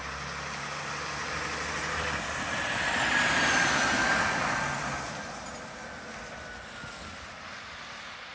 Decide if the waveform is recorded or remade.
recorded